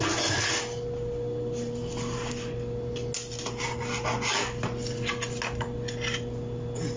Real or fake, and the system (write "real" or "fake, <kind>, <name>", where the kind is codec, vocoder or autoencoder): real